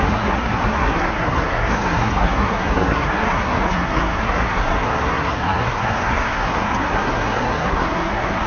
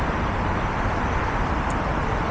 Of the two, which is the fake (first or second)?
first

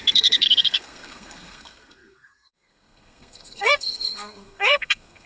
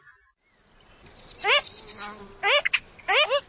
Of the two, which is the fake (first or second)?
first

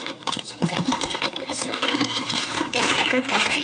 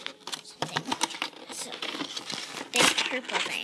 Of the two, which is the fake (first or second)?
first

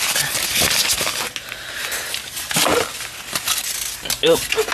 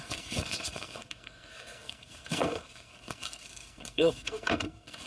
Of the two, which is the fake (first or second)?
second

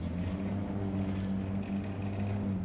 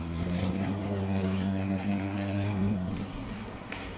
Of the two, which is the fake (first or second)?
second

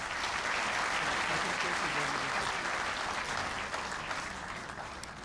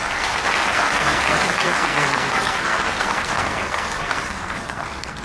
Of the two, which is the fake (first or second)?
second